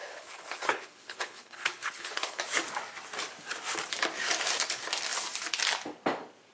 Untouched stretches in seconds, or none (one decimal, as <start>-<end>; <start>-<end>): 2.4-6.5

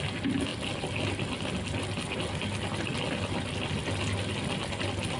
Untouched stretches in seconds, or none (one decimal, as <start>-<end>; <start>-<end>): 0.0-5.2